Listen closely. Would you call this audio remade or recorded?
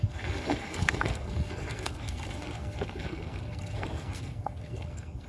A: remade